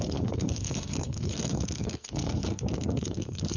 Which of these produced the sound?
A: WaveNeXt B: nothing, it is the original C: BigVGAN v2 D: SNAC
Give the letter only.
D